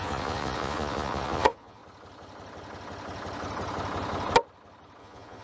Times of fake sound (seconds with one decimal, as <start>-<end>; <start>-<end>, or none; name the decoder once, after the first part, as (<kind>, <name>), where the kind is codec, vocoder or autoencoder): 0.0-1.8 (vocoder, Vocos); 5.0-5.4